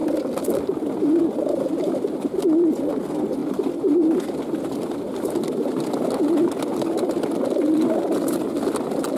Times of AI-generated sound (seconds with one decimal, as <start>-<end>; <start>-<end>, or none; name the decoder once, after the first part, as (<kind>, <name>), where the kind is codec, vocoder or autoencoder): none